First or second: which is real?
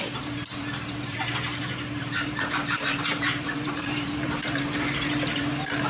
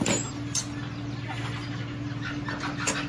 second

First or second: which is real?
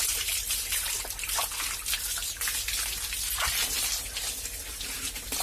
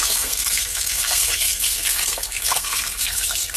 first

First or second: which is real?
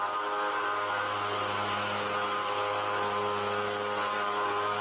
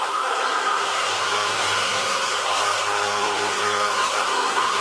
first